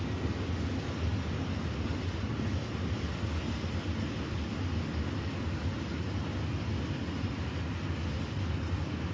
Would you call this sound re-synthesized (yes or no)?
no